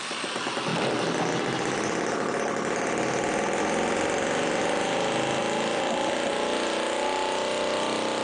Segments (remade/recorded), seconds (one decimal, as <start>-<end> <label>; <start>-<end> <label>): 0.0-8.2 recorded